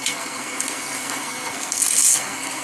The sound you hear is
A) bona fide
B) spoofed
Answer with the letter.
B